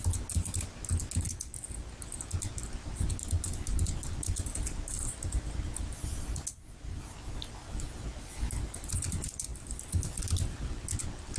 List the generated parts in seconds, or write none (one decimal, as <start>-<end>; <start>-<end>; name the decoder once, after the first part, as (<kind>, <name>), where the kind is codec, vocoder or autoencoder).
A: none